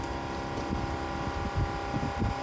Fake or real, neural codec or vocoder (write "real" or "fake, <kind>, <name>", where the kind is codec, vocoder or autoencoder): real